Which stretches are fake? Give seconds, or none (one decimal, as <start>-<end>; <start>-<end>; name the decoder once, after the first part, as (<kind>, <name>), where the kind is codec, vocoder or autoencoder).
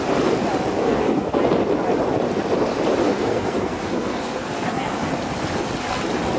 0.8-1.4 (codec, SNAC); 3.0-5.1